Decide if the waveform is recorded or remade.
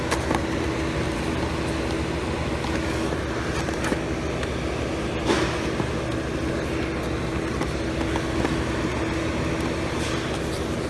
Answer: recorded